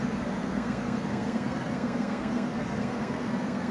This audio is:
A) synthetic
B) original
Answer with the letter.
A